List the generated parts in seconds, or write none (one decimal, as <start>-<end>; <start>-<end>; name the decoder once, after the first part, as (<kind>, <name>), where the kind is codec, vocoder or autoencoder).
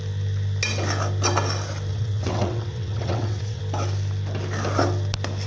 1.9-3.6 (vocoder, WaveNeXt)